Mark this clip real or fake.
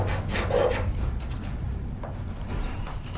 real